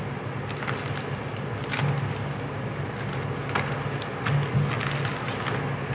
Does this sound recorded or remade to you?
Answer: recorded